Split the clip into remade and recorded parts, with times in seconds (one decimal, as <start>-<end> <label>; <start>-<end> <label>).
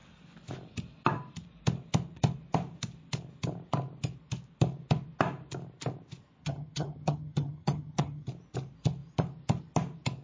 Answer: 0.0-6.4 recorded; 6.4-8.3 remade; 8.3-10.2 recorded